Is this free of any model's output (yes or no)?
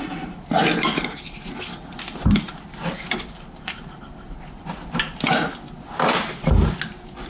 yes